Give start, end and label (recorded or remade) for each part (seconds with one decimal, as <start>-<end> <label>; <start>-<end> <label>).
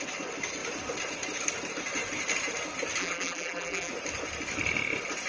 0.0-3.0 recorded; 3.0-3.9 remade; 3.9-5.3 recorded